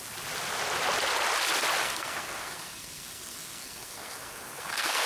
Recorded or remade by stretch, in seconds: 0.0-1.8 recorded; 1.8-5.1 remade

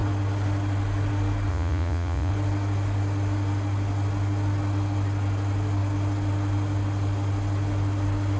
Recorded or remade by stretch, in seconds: 0.0-1.5 recorded; 1.5-2.3 remade; 2.3-8.4 recorded

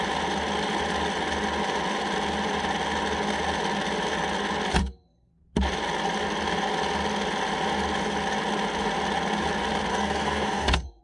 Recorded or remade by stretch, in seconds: 0.0-4.8 recorded; 4.8-5.3 remade; 5.3-9.9 recorded; 9.9-11.0 remade

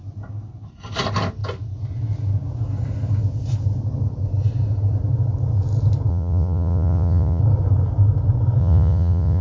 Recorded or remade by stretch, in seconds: 0.0-6.1 recorded; 6.1-7.4 remade; 7.4-8.6 recorded; 8.6-9.4 remade

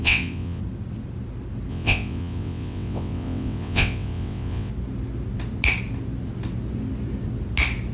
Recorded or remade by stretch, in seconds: 0.0-0.6 remade; 0.6-1.7 recorded; 1.7-4.7 remade; 4.7-7.9 recorded